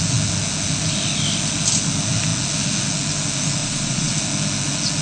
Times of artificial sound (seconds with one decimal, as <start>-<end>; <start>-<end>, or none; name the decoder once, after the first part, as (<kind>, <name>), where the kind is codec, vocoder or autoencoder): 3.6-4.1 (vocoder, Vocos)